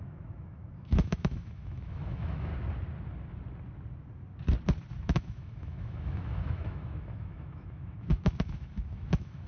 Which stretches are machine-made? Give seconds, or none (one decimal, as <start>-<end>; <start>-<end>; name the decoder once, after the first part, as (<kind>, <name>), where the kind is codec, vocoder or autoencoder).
0.0-2.5 (autoencoder, DAC-VAE); 5.0-9.5